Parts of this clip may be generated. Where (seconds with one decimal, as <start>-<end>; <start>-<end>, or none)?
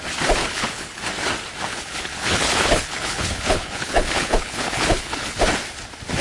0.4-1.0; 1.7-5.4